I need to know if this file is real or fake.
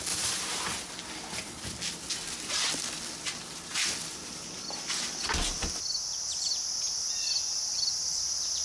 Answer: real